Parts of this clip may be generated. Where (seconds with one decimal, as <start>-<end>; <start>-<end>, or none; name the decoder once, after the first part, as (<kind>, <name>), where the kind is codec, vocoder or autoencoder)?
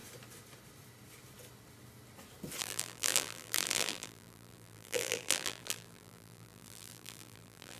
2.6-7.8 (vocoder, BigVGAN v2)